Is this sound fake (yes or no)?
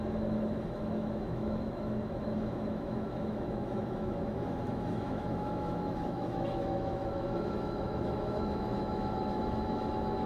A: yes